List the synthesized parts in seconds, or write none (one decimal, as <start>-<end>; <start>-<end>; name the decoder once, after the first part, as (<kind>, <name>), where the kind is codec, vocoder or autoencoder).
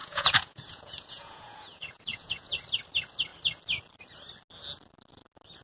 0.0-2.6 (vocoder, Vocos)